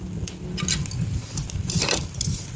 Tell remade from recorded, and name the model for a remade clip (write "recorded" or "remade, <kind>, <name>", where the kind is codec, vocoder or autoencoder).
recorded